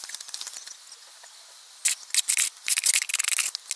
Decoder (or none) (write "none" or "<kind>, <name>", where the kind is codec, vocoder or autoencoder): none